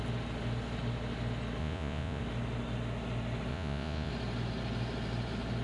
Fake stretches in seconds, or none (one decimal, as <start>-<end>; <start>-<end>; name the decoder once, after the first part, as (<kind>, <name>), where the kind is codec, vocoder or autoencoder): 1.6-2.2 (vocoder, Vocos); 3.5-4.1